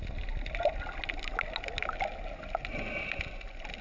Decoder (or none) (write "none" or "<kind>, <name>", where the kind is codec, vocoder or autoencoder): none